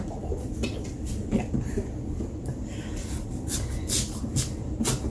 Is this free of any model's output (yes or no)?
yes